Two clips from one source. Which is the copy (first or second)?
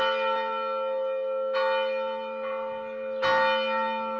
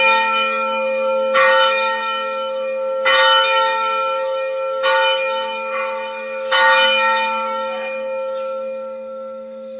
second